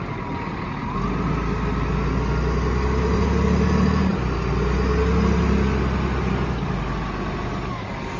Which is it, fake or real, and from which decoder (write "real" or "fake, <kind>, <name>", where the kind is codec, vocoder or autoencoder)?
real